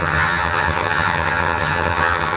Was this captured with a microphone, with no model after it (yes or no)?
no